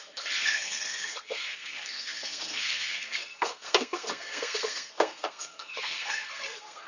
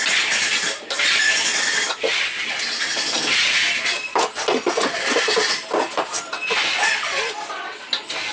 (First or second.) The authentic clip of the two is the second